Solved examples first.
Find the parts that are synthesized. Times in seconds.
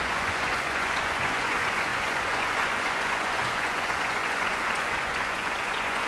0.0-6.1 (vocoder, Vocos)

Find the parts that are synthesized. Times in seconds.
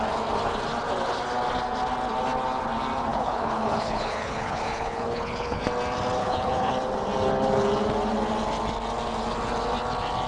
3.1-5.6 (codec, HILCodec); 6.2-6.7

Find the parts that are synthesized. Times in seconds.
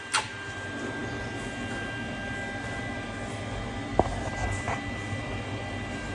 none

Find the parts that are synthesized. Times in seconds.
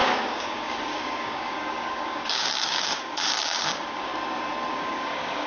0.0-4.1 (codec, DAC); 4.7-5.5